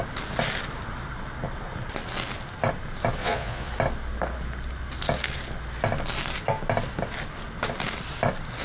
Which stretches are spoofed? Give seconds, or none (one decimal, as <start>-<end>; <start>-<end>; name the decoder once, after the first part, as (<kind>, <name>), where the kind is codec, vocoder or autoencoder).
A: 3.2-3.7 (vocoder, Vocos)